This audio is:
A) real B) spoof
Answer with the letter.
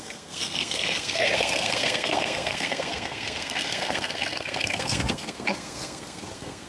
B